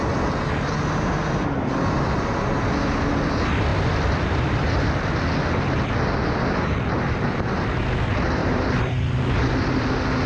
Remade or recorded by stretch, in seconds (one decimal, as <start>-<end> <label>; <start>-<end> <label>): 0.0-3.7 recorded; 3.7-5.1 remade; 5.1-8.4 recorded; 8.4-9.5 remade; 9.5-10.3 recorded